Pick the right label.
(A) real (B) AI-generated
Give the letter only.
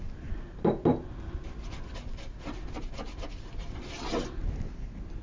A